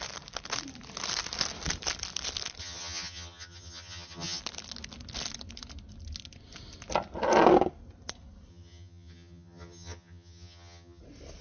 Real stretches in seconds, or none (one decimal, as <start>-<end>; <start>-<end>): 0.0-2.6; 4.4-8.5; 11.0-11.4